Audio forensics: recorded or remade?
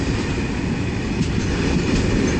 recorded